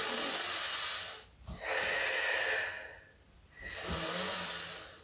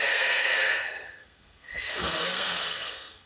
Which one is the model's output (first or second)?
second